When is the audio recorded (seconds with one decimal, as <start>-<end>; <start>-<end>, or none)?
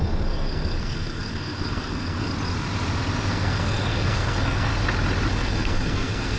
2.3-3.3; 4.7-5.3